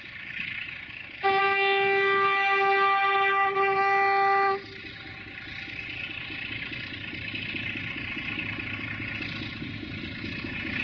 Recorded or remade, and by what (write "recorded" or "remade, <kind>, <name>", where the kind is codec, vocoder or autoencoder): recorded